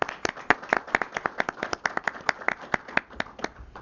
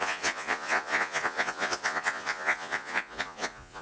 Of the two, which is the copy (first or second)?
second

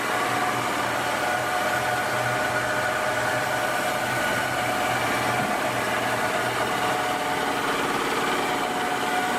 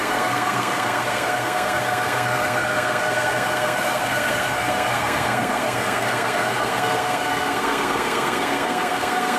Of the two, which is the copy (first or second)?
second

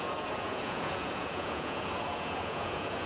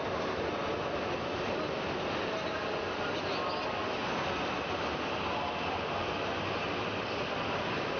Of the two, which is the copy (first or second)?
first